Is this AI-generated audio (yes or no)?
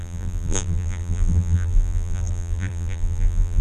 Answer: yes